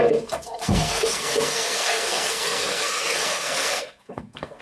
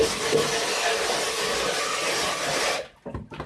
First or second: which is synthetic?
first